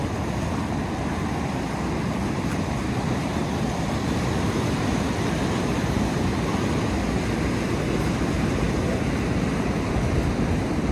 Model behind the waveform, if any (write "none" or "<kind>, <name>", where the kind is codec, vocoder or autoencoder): none